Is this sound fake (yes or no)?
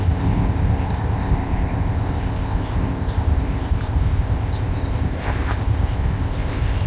yes